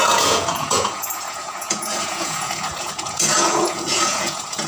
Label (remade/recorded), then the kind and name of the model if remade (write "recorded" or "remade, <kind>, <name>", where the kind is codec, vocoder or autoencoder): remade, vocoder, Vocos